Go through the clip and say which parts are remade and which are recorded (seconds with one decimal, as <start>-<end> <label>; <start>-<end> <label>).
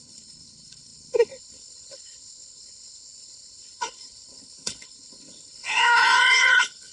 0.0-6.9 remade